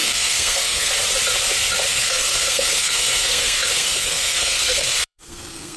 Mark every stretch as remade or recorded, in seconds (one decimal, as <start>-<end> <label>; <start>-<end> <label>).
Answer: 0.0-0.9 remade; 0.9-1.9 recorded; 1.9-5.8 remade